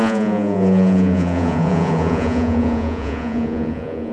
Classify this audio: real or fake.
fake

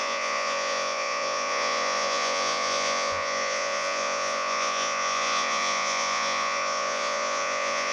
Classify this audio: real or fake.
fake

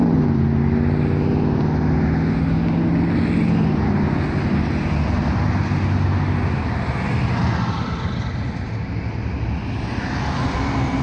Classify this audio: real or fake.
real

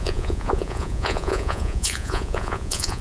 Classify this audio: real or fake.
fake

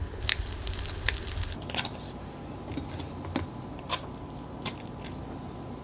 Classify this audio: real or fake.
real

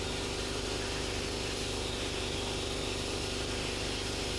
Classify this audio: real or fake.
real